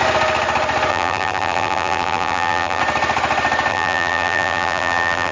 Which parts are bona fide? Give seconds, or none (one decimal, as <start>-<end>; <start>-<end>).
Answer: 0.0-0.9; 2.8-3.7